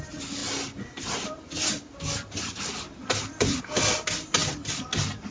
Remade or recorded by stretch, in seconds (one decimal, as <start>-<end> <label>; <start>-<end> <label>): 0.0-5.3 recorded